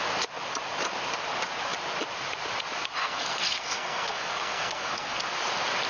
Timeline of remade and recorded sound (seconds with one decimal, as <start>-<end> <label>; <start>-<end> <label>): 0.0-3.0 recorded; 3.0-5.2 remade; 5.2-5.9 recorded